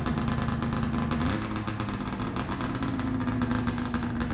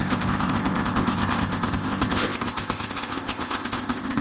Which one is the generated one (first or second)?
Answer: second